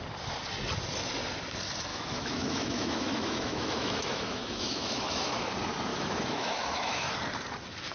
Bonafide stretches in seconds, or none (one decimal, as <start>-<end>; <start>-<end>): 0.0-1.9; 5.5-5.9; 7.1-7.9